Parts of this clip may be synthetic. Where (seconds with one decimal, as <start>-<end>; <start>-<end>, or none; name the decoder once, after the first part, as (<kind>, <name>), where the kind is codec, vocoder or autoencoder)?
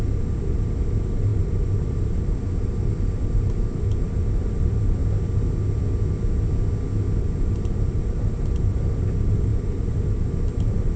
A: 0.0-5.0 (vocoder, BigVGAN v2); 7.2-11.0